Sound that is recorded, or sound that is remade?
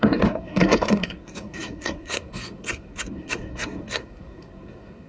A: remade